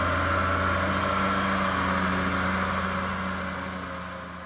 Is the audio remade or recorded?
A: recorded